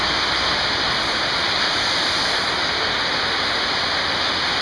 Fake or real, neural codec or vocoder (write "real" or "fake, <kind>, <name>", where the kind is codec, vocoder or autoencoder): real